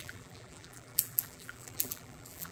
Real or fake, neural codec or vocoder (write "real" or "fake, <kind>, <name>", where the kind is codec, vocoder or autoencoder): fake, vocoder, BigVGAN v2